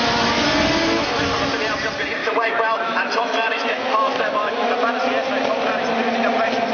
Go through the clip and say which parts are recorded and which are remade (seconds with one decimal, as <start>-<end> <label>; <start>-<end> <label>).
0.0-2.2 recorded; 2.2-4.7 remade; 4.7-6.7 recorded